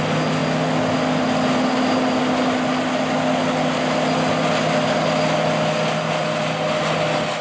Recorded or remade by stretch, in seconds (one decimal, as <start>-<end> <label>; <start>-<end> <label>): 0.0-7.4 recorded

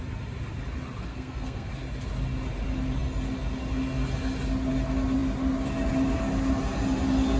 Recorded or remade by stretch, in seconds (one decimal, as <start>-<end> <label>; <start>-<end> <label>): 0.0-1.1 recorded; 1.1-1.7 remade; 1.7-7.4 recorded